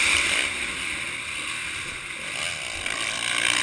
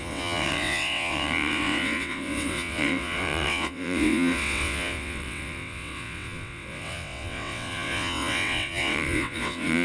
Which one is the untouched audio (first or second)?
first